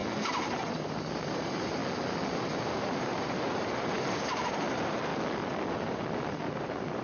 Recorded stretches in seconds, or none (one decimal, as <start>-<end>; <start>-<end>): 0.0-0.7; 1.8-2.3; 5.1-5.7